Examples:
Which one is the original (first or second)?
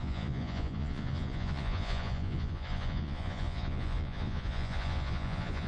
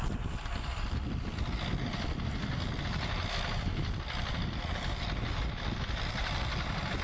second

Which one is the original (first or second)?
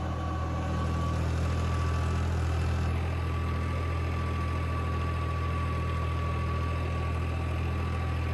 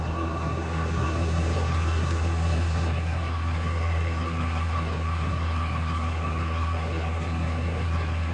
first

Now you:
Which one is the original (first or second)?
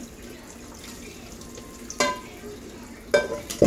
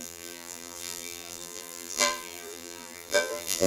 first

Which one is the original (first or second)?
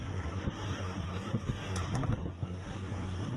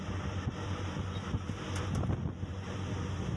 second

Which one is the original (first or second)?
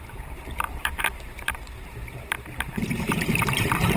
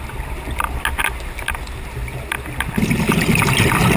second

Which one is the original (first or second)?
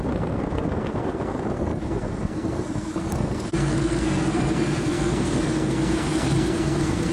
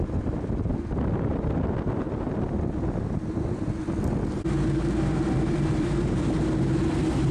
second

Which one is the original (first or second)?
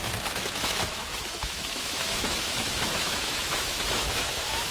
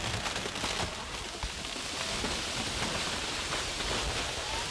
second